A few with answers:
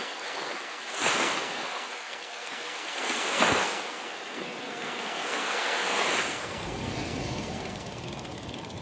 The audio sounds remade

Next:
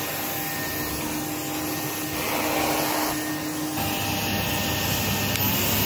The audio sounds recorded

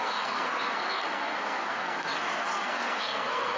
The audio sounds remade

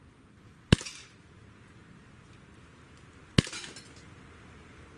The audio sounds recorded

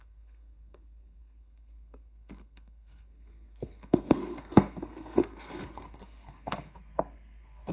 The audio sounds remade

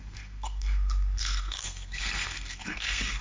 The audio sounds remade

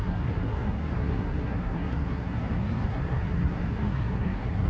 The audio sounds remade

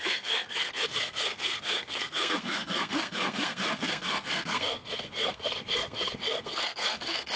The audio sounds remade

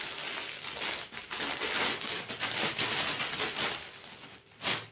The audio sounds recorded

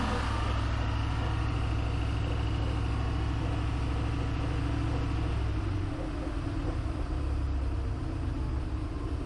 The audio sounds recorded